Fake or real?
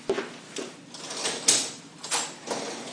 real